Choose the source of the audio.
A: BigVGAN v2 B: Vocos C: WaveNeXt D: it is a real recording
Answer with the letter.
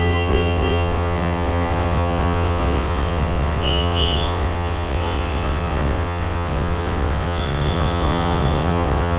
C